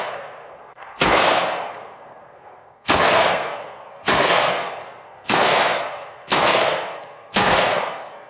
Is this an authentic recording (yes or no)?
no